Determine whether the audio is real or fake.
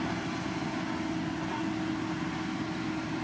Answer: real